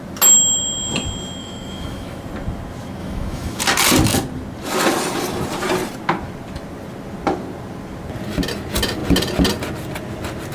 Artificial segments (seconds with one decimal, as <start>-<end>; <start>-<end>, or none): 1.4-2.2; 3.0-3.6